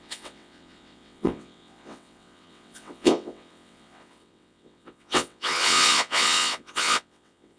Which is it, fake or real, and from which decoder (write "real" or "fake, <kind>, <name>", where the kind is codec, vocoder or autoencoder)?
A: fake, vocoder, WaveNeXt